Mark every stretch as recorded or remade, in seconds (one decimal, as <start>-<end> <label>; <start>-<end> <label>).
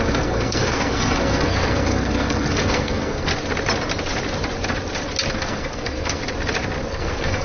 0.0-3.3 remade; 3.3-5.3 recorded; 5.3-6.2 remade; 6.2-6.9 recorded; 6.9-7.4 remade